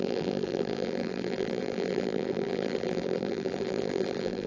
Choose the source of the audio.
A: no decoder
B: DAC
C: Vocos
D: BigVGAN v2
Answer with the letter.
D